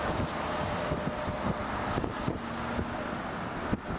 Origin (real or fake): real